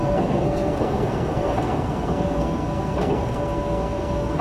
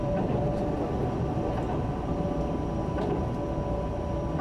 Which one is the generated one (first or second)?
first